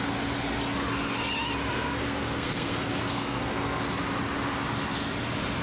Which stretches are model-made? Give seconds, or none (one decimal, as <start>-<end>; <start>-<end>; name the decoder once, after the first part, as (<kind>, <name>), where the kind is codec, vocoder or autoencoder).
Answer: 1.7-3.8 (codec, SNAC)